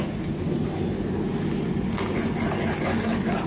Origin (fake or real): real